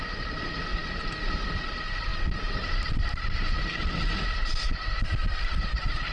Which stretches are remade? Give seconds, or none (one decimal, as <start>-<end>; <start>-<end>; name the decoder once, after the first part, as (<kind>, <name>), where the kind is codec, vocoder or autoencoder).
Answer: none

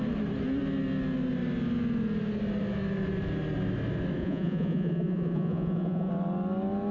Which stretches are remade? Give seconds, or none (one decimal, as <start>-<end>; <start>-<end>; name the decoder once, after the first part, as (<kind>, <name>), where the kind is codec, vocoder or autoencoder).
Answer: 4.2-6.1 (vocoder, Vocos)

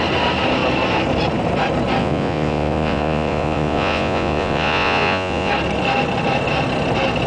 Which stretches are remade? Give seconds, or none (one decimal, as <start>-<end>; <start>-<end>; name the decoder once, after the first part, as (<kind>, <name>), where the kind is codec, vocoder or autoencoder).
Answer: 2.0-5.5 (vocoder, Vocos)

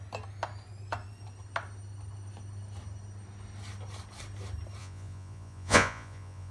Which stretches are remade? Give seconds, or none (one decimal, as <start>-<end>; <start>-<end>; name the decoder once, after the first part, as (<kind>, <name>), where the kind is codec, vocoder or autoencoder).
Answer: 4.8-6.5 (vocoder, Vocos)